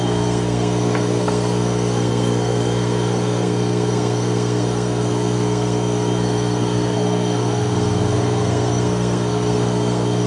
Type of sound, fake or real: fake